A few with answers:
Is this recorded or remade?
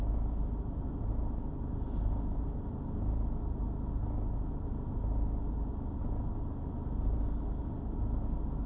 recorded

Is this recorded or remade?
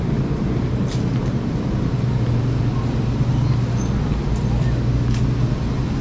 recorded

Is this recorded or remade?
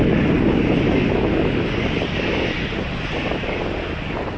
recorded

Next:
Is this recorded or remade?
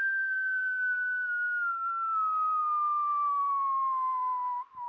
recorded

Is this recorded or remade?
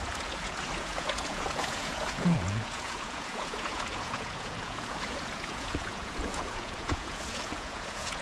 remade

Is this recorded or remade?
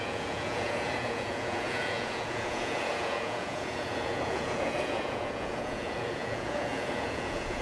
remade